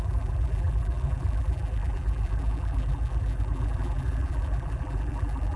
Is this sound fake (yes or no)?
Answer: yes